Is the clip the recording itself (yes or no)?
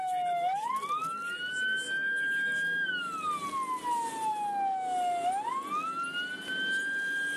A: yes